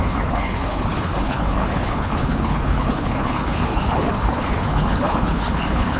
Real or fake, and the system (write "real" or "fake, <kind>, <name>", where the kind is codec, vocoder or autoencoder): fake, codec, HILCodec